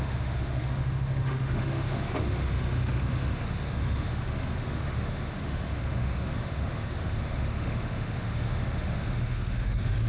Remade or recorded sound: remade